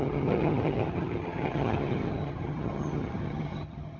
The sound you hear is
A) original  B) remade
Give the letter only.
B